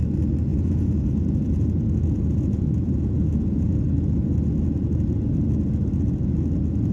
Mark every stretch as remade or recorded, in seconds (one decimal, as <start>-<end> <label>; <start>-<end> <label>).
0.0-0.5 recorded; 0.5-3.8 remade; 3.8-6.9 recorded